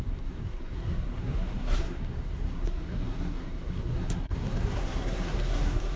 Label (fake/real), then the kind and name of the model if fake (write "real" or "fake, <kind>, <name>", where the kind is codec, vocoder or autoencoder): fake, codec, SNAC